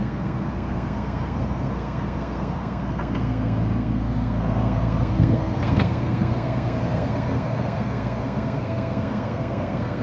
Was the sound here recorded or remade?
remade